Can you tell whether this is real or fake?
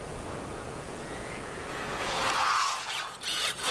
fake